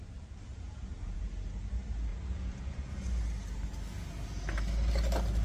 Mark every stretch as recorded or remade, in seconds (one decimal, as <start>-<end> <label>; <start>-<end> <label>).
0.0-0.5 recorded; 0.5-1.2 remade; 1.2-2.1 recorded; 2.1-2.9 remade; 2.9-5.4 recorded